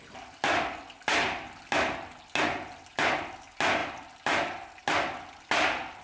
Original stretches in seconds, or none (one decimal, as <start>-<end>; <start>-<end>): 0.0-6.0